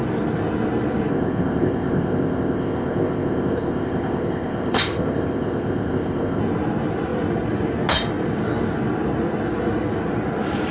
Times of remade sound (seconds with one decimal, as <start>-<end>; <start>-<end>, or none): 1.1-6.4